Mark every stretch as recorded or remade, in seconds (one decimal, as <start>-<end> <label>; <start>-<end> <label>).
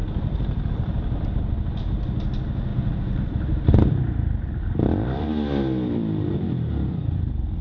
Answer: 0.0-0.7 remade; 0.7-2.7 recorded; 2.7-7.6 remade